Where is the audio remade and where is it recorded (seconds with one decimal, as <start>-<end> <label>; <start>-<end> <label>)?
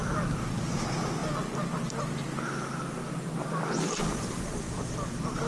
0.0-5.5 recorded